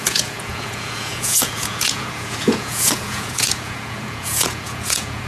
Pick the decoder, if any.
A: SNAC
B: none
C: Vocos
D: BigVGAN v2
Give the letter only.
C